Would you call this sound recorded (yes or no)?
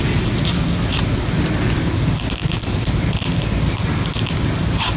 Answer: yes